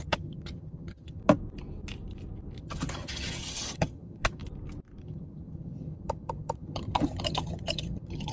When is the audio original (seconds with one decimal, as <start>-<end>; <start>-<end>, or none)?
1.2-2.6; 4.4-5.0